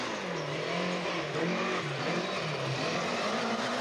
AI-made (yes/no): no